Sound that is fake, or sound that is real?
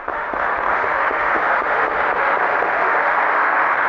fake